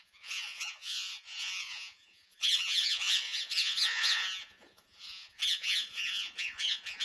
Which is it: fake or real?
fake